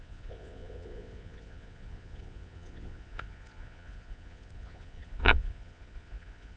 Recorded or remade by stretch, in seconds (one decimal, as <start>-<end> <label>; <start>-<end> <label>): 0.0-6.6 remade

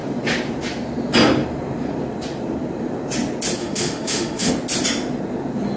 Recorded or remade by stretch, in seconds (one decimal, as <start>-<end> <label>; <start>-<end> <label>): 0.0-3.6 recorded; 3.6-4.5 remade; 4.5-5.8 recorded

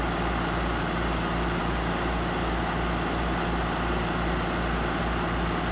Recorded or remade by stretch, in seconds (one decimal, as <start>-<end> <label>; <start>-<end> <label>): 0.0-5.7 recorded

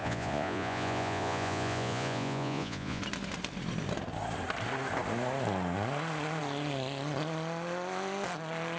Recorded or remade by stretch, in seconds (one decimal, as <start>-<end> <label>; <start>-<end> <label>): 0.0-3.0 remade; 3.0-8.8 recorded

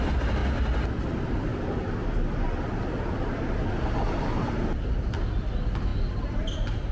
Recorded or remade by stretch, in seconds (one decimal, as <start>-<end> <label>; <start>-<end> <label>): 0.0-0.4 remade; 0.4-1.0 recorded; 1.0-1.5 remade; 1.5-3.3 recorded; 3.3-5.9 remade; 5.9-6.9 recorded

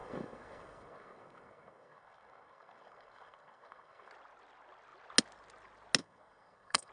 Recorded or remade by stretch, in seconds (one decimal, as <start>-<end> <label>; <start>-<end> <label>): 0.0-4.1 remade; 4.1-6.0 recorded; 6.0-6.9 remade